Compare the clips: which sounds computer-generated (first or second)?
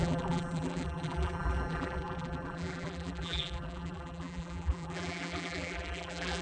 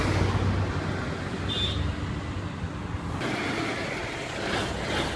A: first